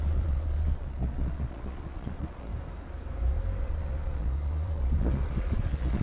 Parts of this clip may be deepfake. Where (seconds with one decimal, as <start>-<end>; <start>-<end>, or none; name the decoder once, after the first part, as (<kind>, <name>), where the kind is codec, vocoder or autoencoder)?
0.0-2.5 (vocoder, Vocos); 3.6-6.0